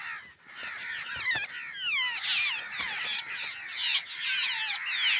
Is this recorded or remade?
recorded